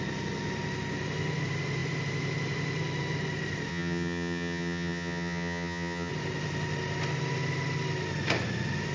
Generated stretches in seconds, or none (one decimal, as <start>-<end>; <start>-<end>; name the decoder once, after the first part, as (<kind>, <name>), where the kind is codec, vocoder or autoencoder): 3.7-6.1 (vocoder, HiFi-GAN)